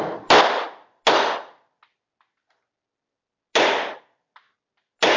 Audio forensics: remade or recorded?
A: recorded